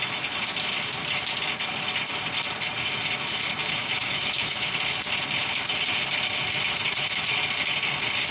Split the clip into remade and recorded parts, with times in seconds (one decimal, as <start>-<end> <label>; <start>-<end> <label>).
0.0-3.8 recorded; 3.8-4.7 remade; 4.7-8.3 recorded